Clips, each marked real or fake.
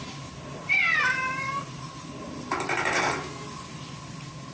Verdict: real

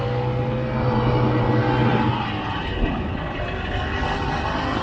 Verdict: real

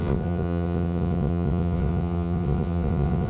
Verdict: fake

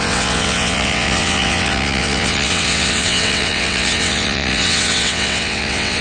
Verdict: fake